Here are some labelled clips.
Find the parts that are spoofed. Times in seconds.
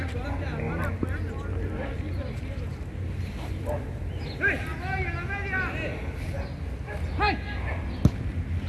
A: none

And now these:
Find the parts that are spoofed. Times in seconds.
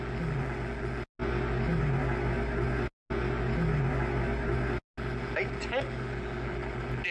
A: none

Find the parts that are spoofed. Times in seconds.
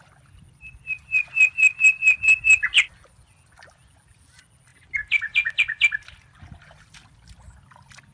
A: none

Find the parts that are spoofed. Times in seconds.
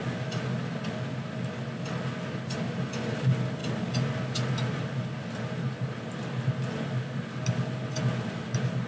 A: none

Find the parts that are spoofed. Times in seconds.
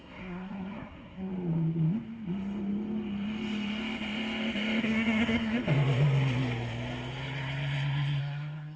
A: 0.0-1.3; 4.8-5.6; 8.2-8.8